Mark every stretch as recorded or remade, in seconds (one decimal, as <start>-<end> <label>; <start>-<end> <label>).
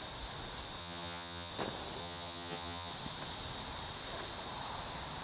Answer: 0.0-0.8 recorded; 0.8-1.5 remade; 1.5-2.0 recorded; 2.0-2.9 remade; 2.9-5.2 recorded